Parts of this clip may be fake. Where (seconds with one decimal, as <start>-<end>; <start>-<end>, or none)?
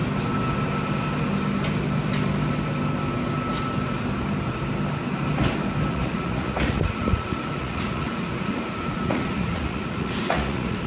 5.9-10.9